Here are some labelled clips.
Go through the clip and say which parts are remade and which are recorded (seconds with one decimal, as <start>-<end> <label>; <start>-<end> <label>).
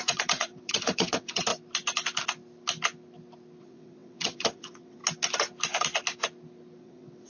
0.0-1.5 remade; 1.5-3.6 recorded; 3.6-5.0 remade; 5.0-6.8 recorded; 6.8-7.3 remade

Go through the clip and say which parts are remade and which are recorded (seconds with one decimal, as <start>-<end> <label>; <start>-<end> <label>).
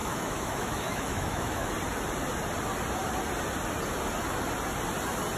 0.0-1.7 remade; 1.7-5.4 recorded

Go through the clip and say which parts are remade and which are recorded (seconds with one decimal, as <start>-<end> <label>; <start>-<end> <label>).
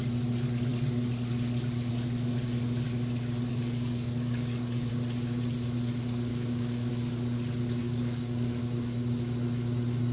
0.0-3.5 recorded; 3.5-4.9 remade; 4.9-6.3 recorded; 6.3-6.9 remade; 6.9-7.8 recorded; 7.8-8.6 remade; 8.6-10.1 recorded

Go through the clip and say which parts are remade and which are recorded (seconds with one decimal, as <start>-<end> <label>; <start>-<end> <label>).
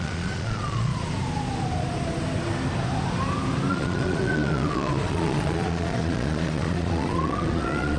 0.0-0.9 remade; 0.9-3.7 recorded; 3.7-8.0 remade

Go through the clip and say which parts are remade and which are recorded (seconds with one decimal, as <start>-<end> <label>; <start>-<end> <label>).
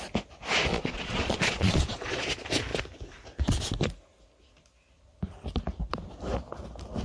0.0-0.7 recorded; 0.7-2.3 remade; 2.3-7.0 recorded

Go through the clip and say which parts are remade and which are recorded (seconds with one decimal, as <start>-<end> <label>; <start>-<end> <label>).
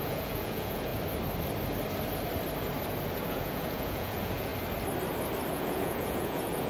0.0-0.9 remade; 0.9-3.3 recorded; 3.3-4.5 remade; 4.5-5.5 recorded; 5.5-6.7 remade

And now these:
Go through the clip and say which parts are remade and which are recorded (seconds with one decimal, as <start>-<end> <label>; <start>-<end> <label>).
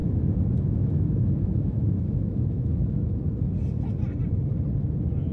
0.0-3.2 remade; 3.2-5.3 recorded